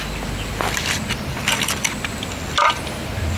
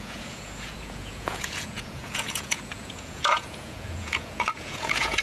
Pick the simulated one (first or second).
second